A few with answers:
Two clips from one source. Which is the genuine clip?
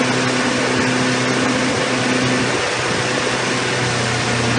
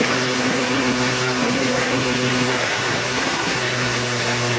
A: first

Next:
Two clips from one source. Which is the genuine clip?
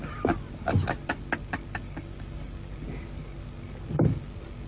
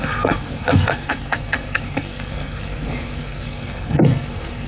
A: first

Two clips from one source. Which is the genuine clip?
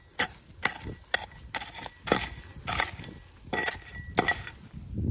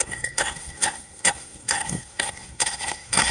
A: first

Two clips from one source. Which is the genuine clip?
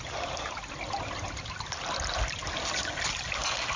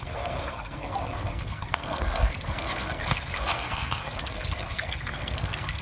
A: first